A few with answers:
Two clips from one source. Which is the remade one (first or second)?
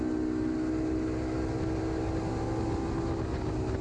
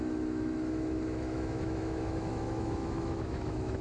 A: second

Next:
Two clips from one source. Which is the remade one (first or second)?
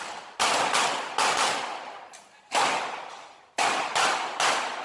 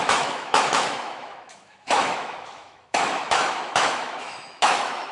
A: second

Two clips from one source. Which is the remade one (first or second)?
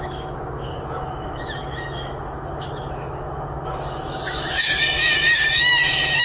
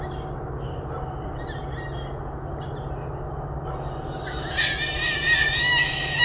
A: first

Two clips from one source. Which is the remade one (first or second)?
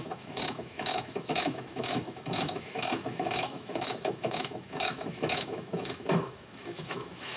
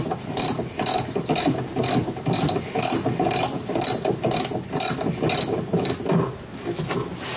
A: first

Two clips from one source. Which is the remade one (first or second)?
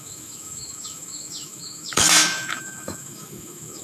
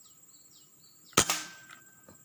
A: first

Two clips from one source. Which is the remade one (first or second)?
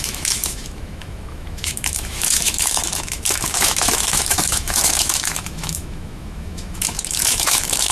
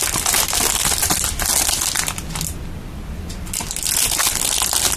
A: first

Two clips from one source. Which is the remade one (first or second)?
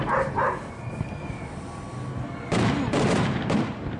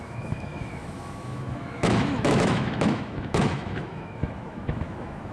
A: second